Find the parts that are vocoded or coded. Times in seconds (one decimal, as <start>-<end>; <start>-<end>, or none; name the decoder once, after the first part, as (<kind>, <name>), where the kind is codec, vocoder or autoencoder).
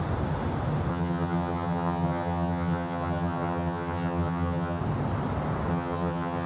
0.9-4.8 (vocoder, HiFi-GAN); 5.7-6.5